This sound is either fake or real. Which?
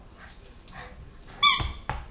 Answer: real